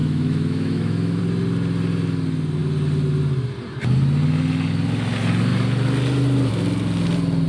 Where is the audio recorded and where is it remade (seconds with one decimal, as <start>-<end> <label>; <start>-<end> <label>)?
0.0-1.2 remade; 1.2-7.5 recorded